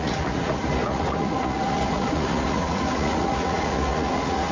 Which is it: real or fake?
fake